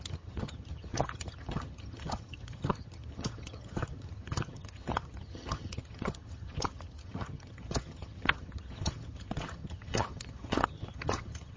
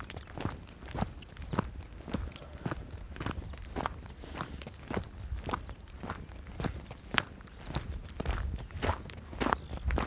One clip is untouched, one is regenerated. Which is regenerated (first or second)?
first